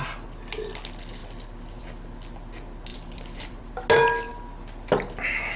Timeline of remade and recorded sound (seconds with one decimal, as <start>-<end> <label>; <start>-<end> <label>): 0.0-2.9 recorded; 2.9-3.7 remade; 3.7-5.6 recorded